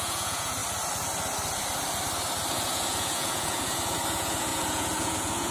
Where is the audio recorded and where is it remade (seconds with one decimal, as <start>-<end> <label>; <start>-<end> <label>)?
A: 0.0-0.6 remade; 0.6-2.5 recorded; 2.5-5.5 remade